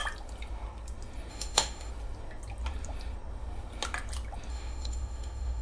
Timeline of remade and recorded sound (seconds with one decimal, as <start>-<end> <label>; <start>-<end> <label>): 0.0-1.3 recorded; 1.3-1.9 remade; 1.9-4.5 recorded; 4.5-5.6 remade